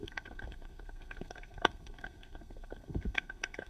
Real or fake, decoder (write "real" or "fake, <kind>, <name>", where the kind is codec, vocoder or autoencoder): fake, codec, SNAC